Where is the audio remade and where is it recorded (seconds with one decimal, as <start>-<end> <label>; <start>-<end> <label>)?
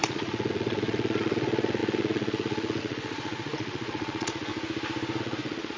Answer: 0.0-4.5 remade; 4.5-5.2 recorded; 5.2-5.8 remade